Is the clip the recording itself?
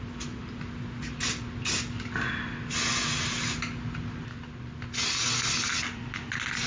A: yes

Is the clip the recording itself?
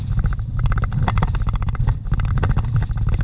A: no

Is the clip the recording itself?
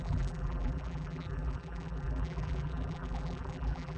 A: no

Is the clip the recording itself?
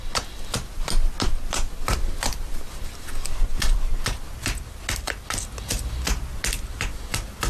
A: yes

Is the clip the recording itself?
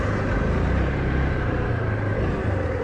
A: no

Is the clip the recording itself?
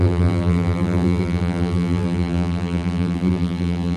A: no